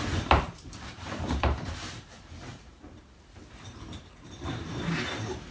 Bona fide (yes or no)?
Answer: no